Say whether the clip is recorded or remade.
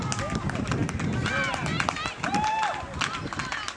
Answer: recorded